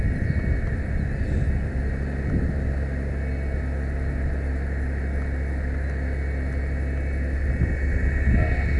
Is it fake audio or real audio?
real